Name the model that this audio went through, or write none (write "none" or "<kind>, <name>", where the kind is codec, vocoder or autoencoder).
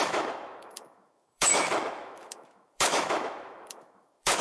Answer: autoencoder, DAC-VAE